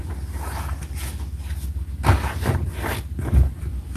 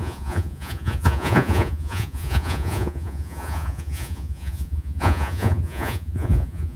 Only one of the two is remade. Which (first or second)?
second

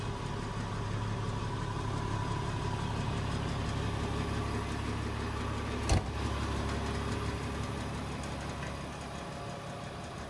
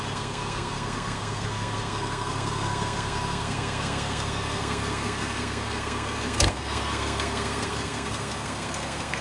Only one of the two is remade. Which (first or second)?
second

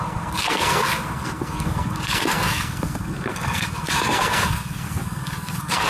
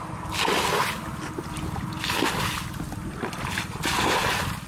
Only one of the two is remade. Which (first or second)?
first